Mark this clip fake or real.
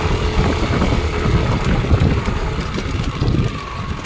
real